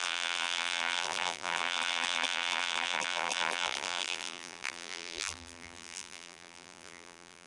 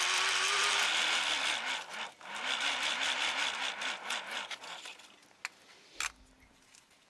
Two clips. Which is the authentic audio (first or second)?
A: second